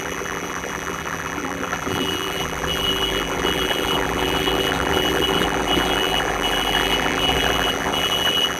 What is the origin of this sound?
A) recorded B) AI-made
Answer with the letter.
B